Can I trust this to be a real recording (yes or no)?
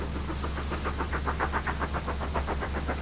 yes